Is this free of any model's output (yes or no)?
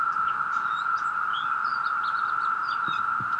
yes